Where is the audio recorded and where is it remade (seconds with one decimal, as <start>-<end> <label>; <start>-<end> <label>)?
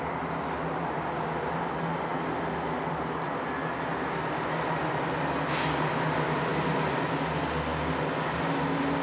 0.0-9.0 recorded